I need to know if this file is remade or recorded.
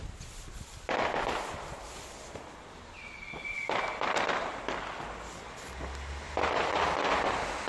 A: recorded